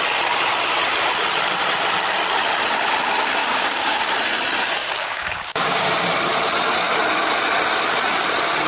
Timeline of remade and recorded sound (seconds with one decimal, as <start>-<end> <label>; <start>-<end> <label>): 0.0-3.4 recorded; 3.4-4.1 remade; 4.1-4.8 recorded; 4.8-5.9 remade; 5.9-8.7 recorded